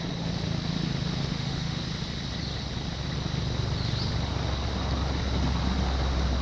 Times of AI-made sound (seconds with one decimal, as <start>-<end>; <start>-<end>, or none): 1.3-1.8